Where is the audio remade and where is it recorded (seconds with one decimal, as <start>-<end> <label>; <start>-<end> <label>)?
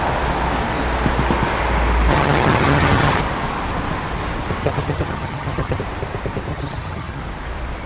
0.0-2.1 recorded; 2.1-3.2 remade; 3.2-4.6 recorded; 4.6-5.8 remade; 5.8-6.5 recorded; 6.5-7.2 remade; 7.2-7.9 recorded